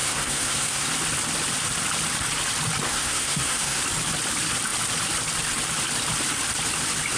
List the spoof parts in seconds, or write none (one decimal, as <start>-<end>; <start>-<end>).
0.0-0.9; 2.9-3.8

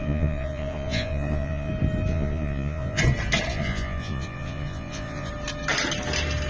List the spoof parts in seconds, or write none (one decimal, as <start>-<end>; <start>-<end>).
0.0-1.7; 2.1-3.0; 3.5-5.3